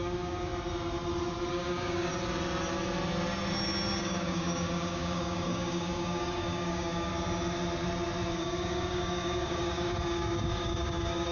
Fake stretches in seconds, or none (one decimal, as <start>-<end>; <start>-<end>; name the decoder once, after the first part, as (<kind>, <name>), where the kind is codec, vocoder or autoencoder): 0.0-0.5 (codec, DAC); 1.5-2.1; 4.0-7.1; 8.4-11.3